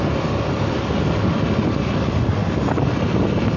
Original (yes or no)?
yes